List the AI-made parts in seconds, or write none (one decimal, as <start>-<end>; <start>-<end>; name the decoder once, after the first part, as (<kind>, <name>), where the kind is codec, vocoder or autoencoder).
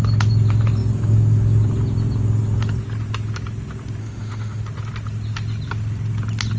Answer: 4.0-4.6 (autoencoder, DAC-VAE)